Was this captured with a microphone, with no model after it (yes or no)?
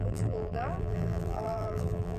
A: no